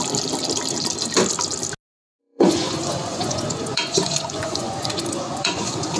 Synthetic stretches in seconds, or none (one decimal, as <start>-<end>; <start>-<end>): 2.2-6.0